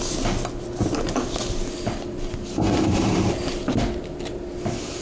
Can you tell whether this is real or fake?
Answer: real